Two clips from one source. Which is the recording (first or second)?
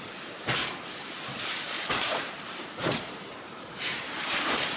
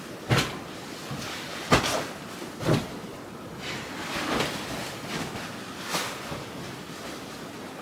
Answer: second